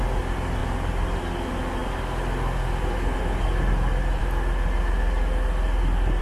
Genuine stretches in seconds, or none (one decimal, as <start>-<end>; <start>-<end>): 0.0-6.2